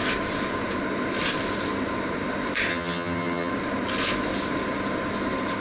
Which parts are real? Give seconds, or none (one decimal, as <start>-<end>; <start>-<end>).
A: 0.0-2.7; 3.5-5.6